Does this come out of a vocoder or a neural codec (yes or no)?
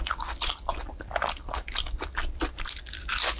no